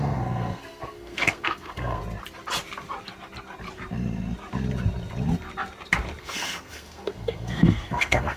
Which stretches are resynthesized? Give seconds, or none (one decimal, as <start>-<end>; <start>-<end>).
0.0-2.0; 6.2-8.4